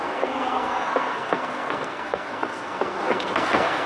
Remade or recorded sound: remade